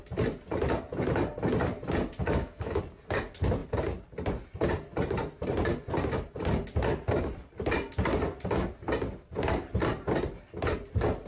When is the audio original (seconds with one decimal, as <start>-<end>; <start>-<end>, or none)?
0.0-2.2; 2.8-11.3